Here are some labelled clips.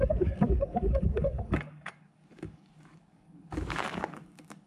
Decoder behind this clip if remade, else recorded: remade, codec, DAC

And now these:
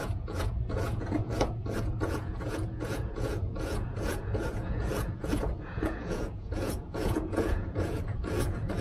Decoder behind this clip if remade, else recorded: remade, vocoder, Vocos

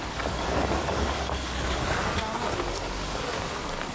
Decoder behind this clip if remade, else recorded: remade, codec, DAC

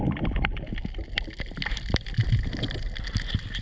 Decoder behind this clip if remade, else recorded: recorded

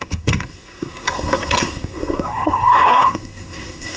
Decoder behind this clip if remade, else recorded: remade, codec, SNAC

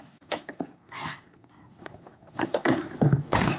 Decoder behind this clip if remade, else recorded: remade, codec, SNAC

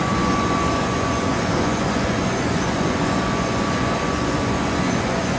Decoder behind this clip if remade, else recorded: remade, vocoder, Vocos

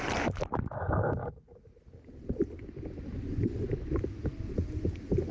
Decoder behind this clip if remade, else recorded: recorded